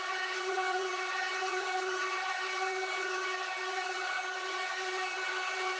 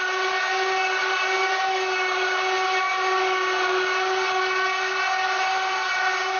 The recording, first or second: second